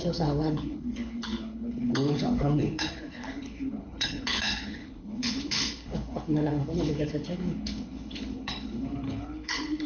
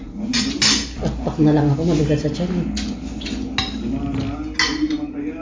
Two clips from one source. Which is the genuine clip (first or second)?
second